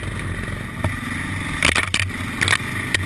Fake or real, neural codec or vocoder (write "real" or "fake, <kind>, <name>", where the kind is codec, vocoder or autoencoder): real